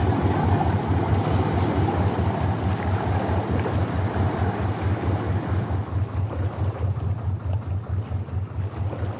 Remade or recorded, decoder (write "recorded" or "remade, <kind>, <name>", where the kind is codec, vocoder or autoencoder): recorded